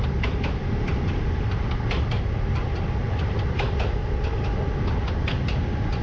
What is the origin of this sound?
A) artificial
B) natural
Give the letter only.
B